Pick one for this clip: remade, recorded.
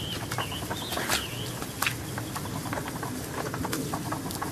recorded